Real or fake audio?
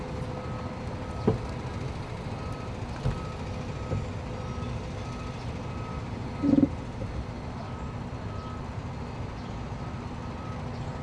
real